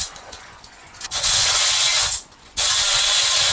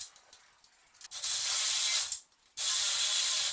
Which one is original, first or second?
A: second